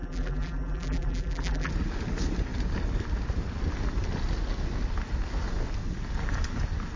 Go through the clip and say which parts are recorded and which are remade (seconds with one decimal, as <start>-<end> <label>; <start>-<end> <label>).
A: 0.0-1.7 remade; 1.7-7.0 recorded